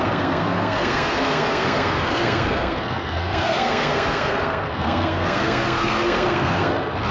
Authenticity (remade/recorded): remade